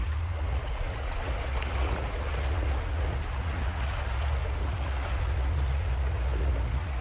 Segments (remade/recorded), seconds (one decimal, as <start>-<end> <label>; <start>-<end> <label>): 0.0-7.0 remade